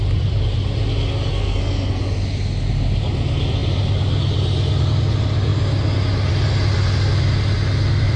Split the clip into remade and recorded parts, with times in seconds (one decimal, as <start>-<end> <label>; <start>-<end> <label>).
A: 0.0-1.3 recorded; 1.3-2.0 remade; 2.0-8.2 recorded